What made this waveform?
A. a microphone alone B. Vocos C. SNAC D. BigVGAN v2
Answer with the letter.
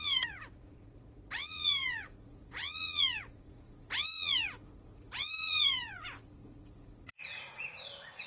B